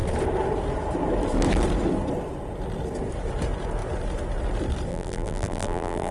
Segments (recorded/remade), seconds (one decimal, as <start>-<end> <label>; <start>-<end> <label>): 0.0-4.9 recorded; 4.9-6.1 remade